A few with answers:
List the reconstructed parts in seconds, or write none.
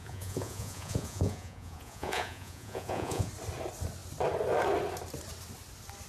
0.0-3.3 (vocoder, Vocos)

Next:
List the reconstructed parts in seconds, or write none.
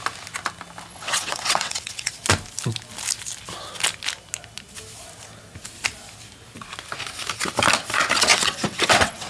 0.9-2.1 (vocoder, WaveNeXt); 8.3-9.3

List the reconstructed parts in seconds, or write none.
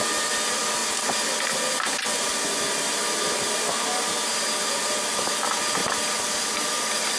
5.8-7.2 (vocoder, BigVGAN v2)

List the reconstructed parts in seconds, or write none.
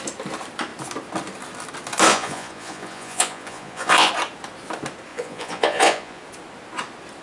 2.1-4.1 (vocoder, Vocos); 5.1-6.2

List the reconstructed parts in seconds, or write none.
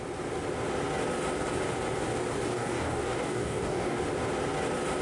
2.5-4.0 (codec, DAC)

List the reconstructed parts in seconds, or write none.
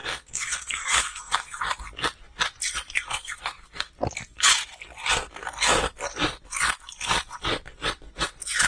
0.0-1.6 (codec, SNAC); 3.0-3.9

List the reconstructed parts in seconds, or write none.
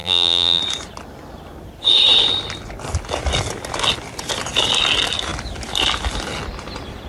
0.0-0.6 (vocoder, BigVGAN v2)